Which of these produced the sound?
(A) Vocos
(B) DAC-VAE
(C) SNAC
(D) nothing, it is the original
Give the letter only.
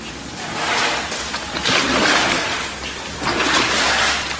D